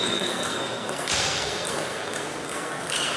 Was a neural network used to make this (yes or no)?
yes